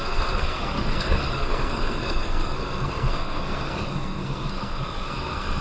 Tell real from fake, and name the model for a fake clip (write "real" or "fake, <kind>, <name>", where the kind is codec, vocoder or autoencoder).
fake, codec, SNAC